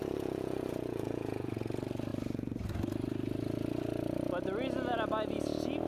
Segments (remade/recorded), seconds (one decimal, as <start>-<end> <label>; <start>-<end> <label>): 0.0-1.5 remade; 1.5-5.9 recorded

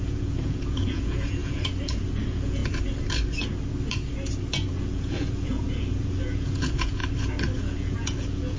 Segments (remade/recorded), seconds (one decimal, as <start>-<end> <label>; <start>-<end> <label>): 0.0-2.6 remade; 2.6-4.7 recorded; 4.7-7.0 remade; 7.0-7.6 recorded; 7.6-8.6 remade